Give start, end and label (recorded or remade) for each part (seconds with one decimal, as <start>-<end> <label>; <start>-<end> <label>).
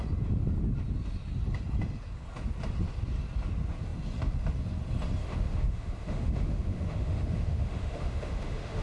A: 0.0-5.2 recorded; 5.2-8.8 remade